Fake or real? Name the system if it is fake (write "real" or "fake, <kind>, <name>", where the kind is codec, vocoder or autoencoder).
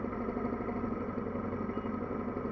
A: real